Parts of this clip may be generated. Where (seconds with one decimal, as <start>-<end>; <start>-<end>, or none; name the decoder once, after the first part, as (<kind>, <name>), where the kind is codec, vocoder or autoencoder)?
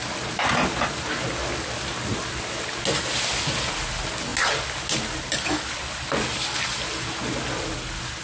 none